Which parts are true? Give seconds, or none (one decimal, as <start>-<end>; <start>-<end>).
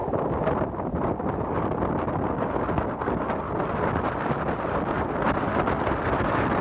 0.0-6.6